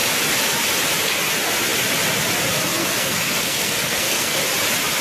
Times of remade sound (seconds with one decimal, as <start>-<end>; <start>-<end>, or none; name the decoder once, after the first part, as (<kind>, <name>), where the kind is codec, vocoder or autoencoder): 2.8-4.4 (codec, SNAC)